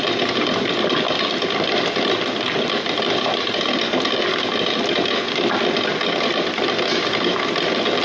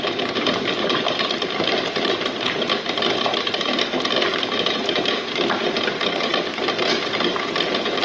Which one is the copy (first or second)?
second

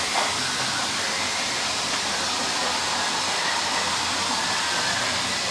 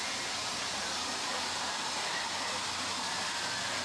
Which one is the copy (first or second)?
first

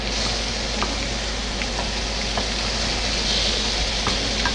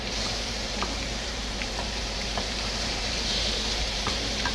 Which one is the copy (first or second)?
second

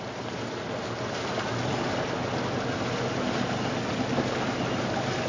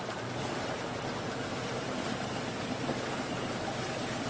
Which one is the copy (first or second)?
second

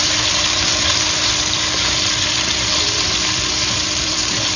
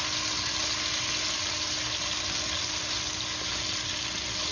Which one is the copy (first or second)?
first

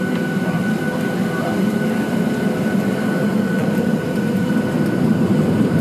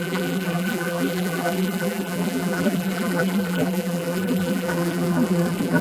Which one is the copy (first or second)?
second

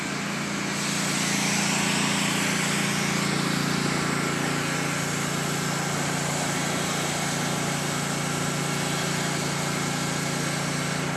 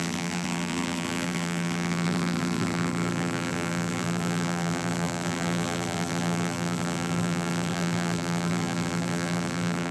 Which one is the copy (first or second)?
second